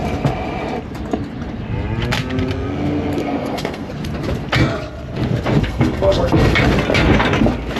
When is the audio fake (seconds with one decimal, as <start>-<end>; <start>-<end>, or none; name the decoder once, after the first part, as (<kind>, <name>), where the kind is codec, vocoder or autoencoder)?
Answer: 3.2-3.9 (codec, SNAC); 5.6-6.5